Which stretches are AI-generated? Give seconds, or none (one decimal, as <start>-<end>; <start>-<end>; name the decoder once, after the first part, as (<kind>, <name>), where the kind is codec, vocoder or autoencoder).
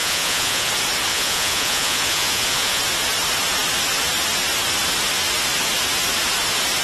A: 0.0-0.7 (vocoder, Vocos); 1.1-2.8